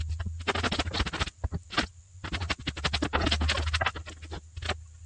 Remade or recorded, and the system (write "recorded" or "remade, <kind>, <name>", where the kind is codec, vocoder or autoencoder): recorded